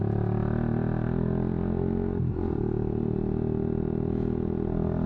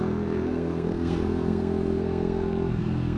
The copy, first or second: second